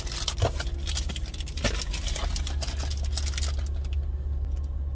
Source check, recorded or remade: recorded